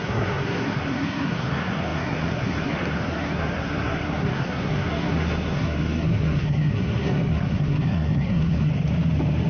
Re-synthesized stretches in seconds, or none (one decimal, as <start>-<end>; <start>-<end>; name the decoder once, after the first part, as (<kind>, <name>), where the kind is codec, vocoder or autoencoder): 0.0-8.7 (codec, SNAC)